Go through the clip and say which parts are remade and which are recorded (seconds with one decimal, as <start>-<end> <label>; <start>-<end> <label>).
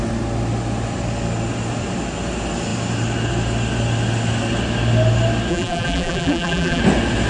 0.0-5.5 recorded; 5.5-6.8 remade; 6.8-7.3 recorded